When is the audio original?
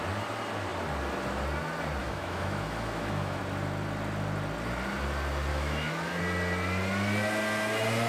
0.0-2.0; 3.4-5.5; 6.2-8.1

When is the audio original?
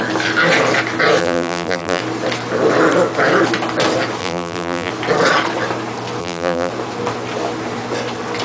0.0-1.2; 2.0-4.2; 4.9-6.2; 6.7-8.4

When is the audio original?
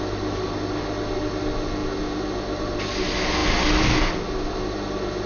0.0-5.3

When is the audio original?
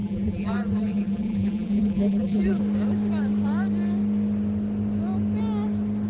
2.6-6.1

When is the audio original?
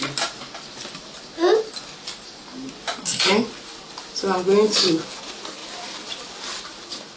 0.0-5.6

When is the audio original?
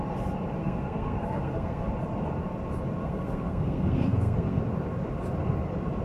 0.0-0.6; 1.9-3.0; 4.6-6.0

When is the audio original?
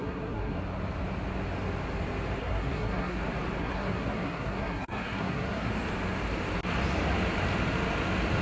0.6-2.4; 3.2-3.6; 5.7-8.4